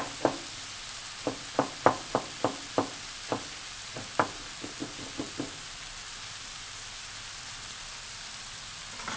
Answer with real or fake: real